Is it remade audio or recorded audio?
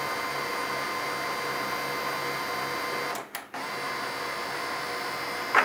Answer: recorded